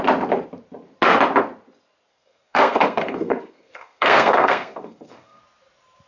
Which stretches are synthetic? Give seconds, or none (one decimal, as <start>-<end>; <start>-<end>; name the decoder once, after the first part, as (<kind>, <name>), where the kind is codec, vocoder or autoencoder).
2.1-5.4 (codec, SNAC)